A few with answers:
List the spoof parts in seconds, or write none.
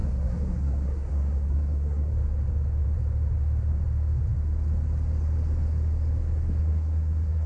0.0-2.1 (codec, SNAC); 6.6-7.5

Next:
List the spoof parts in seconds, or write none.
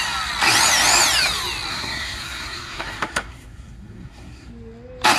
1.7-4.5 (codec, SNAC)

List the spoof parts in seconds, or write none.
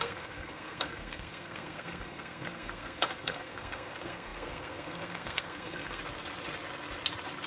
0.0-6.0 (codec, SNAC)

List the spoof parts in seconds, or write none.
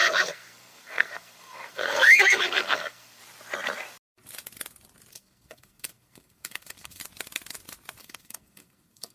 0.0-3.2 (codec, SNAC); 5.1-7.0; 8.0-9.1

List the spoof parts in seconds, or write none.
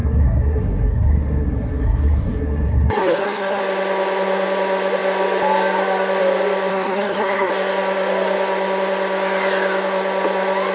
0.0-3.6 (codec, SNAC); 6.7-7.5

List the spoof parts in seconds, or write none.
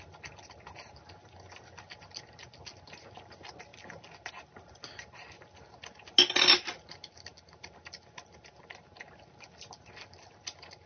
none